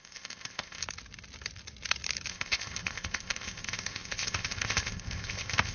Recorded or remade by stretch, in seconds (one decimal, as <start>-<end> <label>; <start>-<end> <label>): 0.0-0.8 remade; 0.8-2.3 recorded; 2.3-5.7 remade